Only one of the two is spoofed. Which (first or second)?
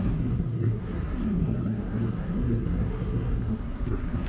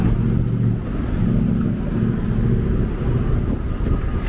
first